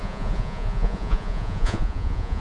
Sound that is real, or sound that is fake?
fake